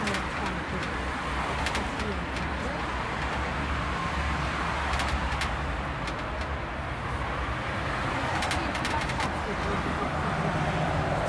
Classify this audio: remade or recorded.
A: recorded